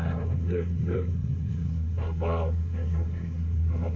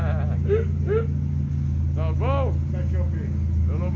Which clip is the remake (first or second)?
first